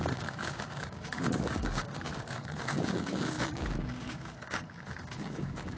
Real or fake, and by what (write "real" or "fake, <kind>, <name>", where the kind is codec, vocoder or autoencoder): fake, codec, DAC